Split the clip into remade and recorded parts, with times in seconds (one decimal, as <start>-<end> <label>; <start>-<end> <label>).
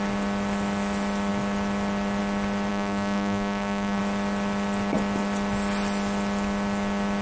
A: 0.0-2.7 recorded; 2.7-4.0 remade; 4.0-7.2 recorded